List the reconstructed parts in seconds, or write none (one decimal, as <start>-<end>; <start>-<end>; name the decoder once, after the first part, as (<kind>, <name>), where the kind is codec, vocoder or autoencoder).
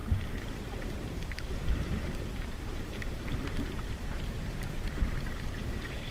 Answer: 0.0-6.1 (vocoder, BigVGAN v2)